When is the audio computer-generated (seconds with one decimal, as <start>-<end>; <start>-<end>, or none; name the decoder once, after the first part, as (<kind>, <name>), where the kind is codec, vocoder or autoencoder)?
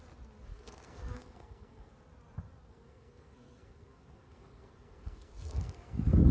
0.5-1.9 (codec, SNAC); 2.7-6.3